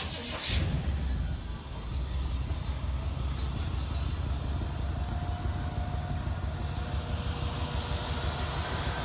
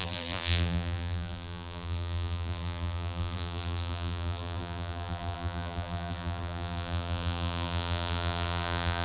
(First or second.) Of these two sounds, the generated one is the second